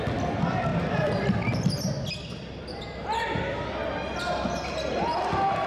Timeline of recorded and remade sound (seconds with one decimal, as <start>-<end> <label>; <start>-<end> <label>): 0.0-0.7 recorded; 0.7-1.2 remade; 1.2-5.7 recorded